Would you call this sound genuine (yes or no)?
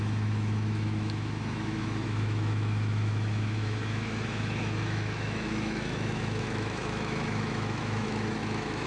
no